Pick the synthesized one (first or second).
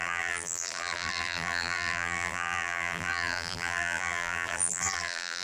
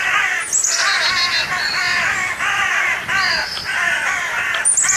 first